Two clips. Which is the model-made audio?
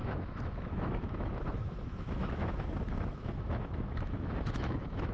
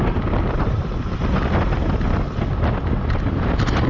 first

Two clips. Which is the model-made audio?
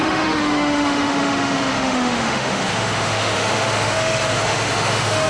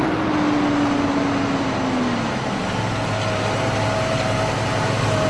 first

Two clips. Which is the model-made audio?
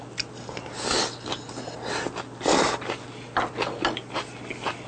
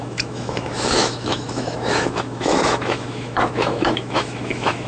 second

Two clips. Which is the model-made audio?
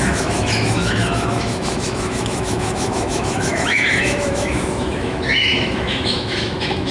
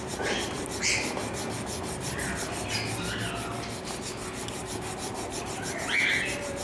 first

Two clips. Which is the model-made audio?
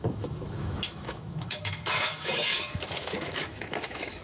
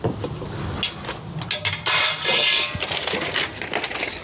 first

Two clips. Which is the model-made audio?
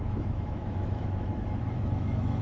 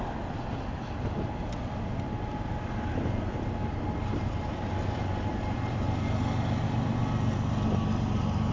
first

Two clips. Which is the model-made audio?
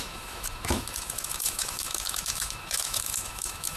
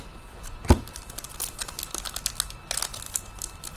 first